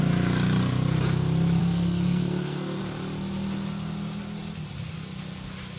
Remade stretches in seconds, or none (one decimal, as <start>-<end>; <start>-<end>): 1.6-2.8